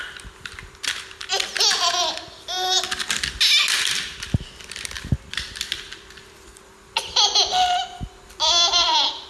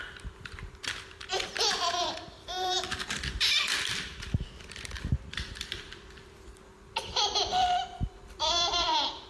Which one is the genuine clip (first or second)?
first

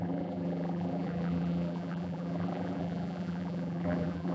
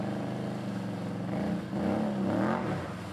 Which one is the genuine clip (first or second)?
second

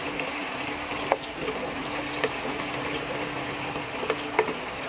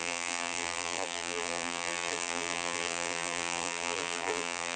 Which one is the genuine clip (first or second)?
first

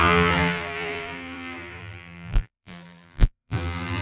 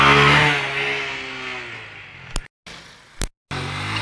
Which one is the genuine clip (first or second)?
second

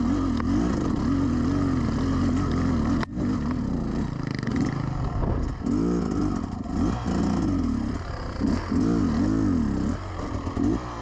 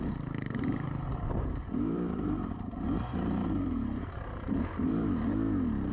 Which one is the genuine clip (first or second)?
first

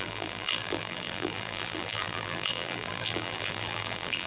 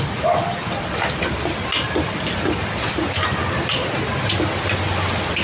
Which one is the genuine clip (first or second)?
second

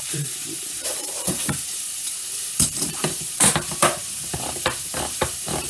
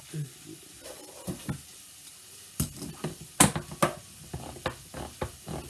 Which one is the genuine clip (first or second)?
second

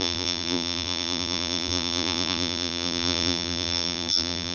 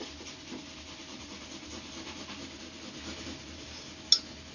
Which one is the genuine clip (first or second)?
second